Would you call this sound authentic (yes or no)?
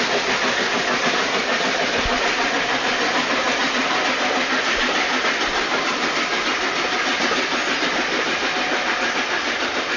yes